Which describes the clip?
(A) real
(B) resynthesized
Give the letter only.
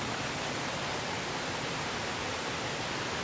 A